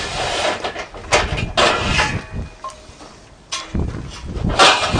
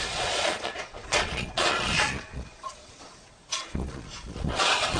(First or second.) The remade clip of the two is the second